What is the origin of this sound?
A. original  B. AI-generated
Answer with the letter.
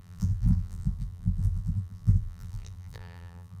B